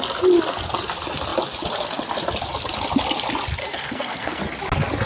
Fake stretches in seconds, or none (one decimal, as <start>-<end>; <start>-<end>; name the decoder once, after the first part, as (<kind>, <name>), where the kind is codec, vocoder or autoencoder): 3.6-4.4 (codec, SNAC)